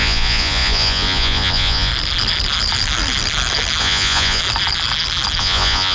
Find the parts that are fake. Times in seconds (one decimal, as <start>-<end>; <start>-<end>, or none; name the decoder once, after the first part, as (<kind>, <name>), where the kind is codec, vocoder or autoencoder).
0.0-1.9 (vocoder, Vocos); 3.8-4.4; 5.4-5.9